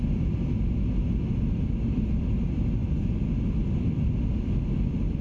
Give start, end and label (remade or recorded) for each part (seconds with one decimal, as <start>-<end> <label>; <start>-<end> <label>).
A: 0.0-5.2 recorded

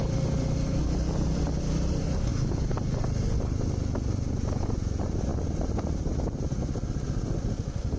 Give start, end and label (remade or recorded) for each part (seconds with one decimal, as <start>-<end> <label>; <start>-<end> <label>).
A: 0.0-8.0 recorded

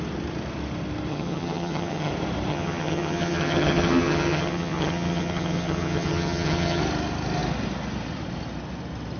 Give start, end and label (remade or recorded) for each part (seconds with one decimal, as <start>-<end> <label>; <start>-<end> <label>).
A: 0.0-1.1 recorded; 1.1-2.1 remade; 2.1-2.5 recorded; 2.5-6.8 remade; 6.8-9.2 recorded

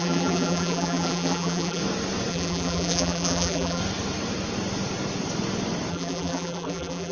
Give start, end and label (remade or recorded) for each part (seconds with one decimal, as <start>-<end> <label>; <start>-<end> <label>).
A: 0.0-1.8 remade; 1.8-2.3 recorded; 2.3-3.8 remade; 3.8-5.9 recorded; 5.9-7.1 remade

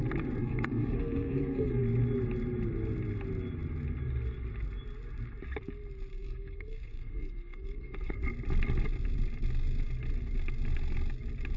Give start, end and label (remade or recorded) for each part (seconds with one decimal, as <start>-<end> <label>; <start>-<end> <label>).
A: 0.0-0.4 recorded; 0.4-1.8 remade; 1.8-6.1 recorded; 6.1-8.1 remade; 8.1-11.6 recorded

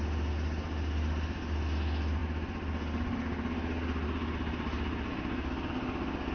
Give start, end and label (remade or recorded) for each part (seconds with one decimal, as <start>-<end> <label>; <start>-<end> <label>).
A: 0.0-6.3 recorded

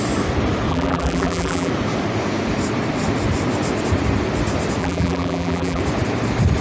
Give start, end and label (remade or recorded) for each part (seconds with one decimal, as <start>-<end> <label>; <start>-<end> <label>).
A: 0.0-0.7 recorded; 0.7-1.7 remade; 1.7-4.8 recorded; 4.8-5.8 remade; 5.8-6.6 recorded